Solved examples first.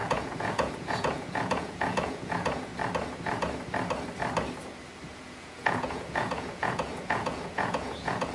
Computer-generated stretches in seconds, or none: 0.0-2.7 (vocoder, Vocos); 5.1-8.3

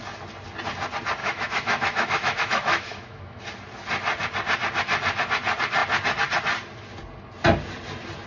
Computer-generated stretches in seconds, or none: 1.2-3.4 (autoencoder, DAC-VAE)